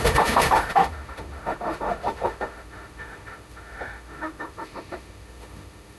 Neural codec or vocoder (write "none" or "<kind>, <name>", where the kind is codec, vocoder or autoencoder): autoencoder, DAC-VAE